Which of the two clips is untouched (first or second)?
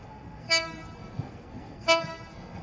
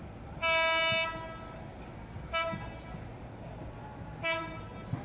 second